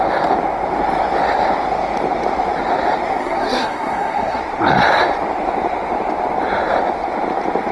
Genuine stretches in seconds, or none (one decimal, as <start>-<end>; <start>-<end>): 0.0-3.2; 4.4-7.7